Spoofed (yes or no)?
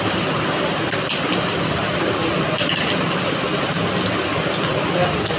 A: no